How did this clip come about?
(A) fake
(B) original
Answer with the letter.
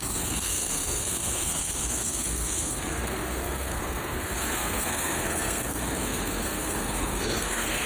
A